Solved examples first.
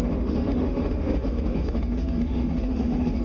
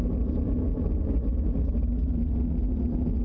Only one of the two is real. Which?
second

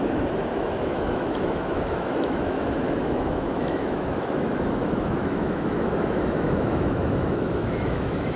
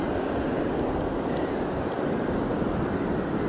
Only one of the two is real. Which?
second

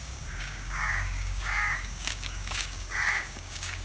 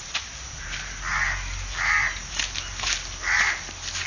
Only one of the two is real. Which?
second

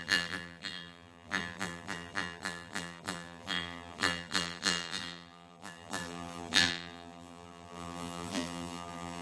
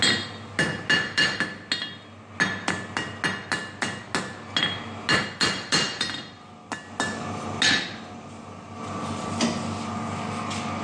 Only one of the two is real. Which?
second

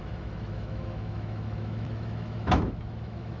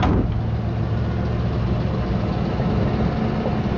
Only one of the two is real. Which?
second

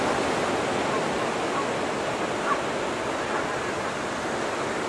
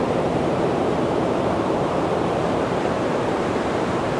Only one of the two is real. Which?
first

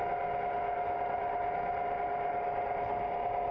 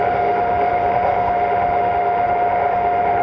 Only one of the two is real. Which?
first